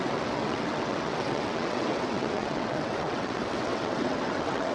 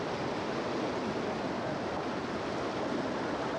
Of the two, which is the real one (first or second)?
second